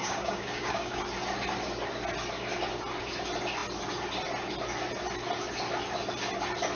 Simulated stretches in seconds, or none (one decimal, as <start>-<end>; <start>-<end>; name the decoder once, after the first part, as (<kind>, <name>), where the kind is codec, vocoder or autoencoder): 0.0-1.0 (codec, DAC)